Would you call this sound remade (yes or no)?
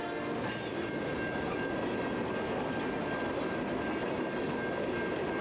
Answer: no